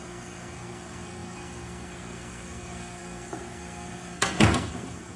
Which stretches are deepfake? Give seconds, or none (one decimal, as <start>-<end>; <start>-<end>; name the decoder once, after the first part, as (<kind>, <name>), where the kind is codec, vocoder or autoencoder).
0.0-5.2 (codec, SNAC)